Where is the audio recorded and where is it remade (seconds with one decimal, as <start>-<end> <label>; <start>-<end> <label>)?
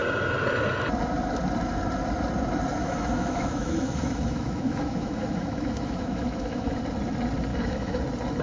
0.0-2.8 recorded; 2.8-6.8 remade; 6.8-7.5 recorded; 7.5-8.0 remade; 8.0-8.4 recorded